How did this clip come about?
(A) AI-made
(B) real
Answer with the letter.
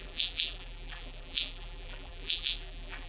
A